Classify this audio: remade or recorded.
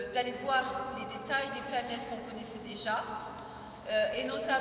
remade